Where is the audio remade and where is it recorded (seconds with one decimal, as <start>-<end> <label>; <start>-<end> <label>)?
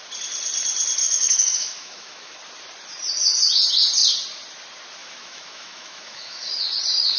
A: 0.0-1.0 recorded; 1.0-2.4 remade; 2.4-5.0 recorded; 5.0-6.5 remade; 6.5-7.2 recorded